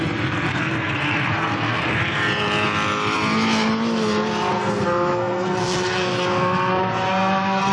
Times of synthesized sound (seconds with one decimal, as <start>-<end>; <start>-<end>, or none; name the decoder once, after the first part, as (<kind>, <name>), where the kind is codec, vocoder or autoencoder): 0.5-2.0 (codec, SNAC); 4.5-7.7